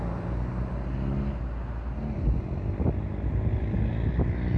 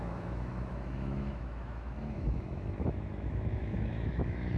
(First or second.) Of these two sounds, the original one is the first